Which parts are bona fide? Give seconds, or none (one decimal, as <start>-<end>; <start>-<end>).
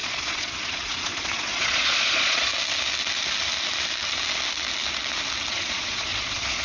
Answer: 2.5-5.5